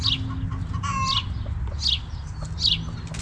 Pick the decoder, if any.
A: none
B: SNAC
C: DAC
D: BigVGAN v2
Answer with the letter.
A